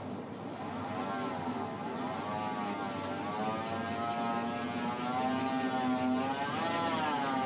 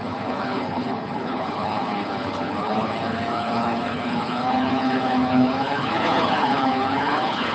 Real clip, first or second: first